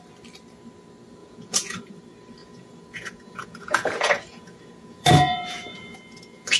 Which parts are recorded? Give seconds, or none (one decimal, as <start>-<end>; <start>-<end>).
0.0-1.2; 1.9-2.4